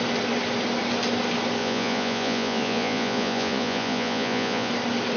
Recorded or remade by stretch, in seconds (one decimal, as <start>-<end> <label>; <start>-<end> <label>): 0.0-1.6 recorded; 1.6-4.7 remade; 4.7-5.2 recorded